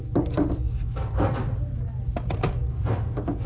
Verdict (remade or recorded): recorded